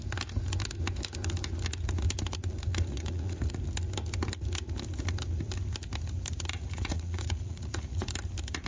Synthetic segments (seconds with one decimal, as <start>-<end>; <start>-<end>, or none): 2.7-3.5; 6.5-8.1